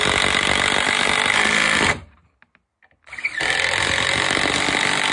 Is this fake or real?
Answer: real